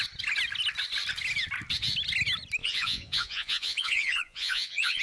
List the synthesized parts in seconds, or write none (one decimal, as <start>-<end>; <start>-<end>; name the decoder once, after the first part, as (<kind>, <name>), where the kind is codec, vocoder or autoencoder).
2.6-5.0 (vocoder, Vocos)